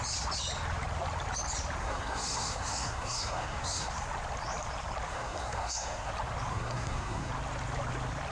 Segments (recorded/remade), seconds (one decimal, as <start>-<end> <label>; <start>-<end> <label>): 0.0-1.8 recorded; 1.8-3.9 remade; 3.9-5.1 recorded; 5.1-6.1 remade; 6.1-6.5 recorded; 6.5-7.3 remade; 7.3-8.3 recorded